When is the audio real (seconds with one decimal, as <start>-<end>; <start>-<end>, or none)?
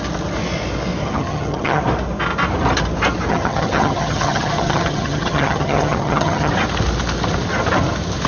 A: 0.0-1.0; 1.8-3.3; 6.5-8.3